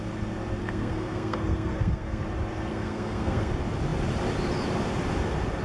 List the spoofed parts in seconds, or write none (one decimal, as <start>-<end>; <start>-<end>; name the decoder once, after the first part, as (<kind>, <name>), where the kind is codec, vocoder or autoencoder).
0.6-2.2 (codec, SNAC); 2.7-3.5